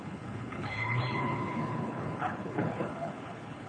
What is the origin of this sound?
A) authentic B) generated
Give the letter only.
B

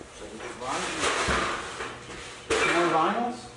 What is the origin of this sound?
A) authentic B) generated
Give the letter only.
A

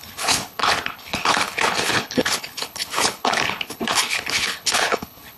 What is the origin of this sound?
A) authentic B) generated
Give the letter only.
B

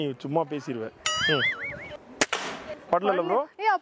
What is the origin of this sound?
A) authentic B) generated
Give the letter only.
A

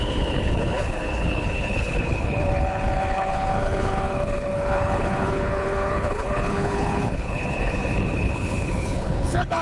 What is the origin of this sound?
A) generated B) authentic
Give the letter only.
A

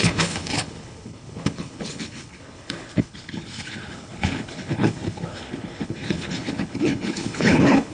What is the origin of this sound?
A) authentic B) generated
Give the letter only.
B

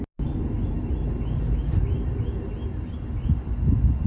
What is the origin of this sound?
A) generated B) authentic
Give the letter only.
B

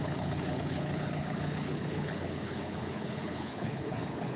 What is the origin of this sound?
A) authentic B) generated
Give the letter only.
B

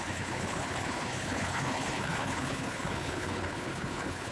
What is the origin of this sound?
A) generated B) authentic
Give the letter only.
A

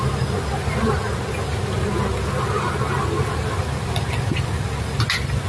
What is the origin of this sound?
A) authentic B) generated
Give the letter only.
A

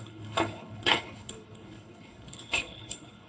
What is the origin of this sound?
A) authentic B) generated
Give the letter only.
B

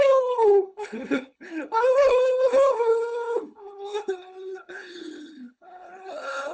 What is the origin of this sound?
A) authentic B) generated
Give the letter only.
B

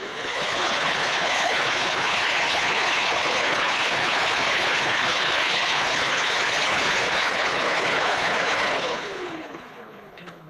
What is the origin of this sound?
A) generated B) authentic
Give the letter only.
A